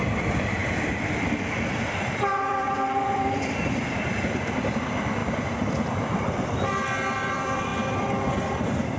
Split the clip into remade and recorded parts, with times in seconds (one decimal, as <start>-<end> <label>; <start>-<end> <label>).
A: 0.0-9.0 remade